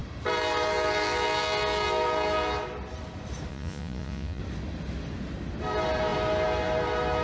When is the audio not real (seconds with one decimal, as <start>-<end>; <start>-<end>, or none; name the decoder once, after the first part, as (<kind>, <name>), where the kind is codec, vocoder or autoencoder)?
3.5-4.4 (vocoder, Vocos)